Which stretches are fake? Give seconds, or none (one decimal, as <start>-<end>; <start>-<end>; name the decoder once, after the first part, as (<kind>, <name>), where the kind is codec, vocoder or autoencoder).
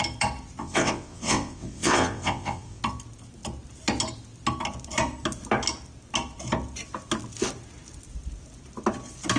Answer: 0.6-2.8 (vocoder, WaveNeXt)